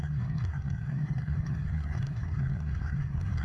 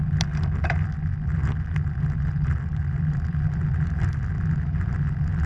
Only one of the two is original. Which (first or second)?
second